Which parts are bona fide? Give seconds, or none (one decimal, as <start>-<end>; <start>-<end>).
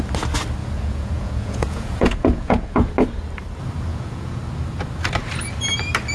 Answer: 0.0-0.6; 2.9-3.9; 4.4-6.1